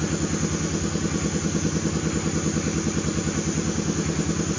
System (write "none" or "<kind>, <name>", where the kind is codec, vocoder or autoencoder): none